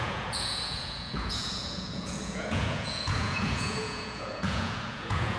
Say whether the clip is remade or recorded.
remade